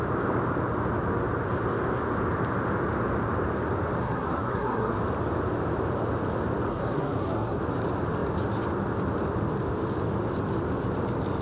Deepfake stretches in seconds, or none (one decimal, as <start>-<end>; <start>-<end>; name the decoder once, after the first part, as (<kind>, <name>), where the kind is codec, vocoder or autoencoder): 4.0-5.0 (codec, SNAC); 6.7-7.6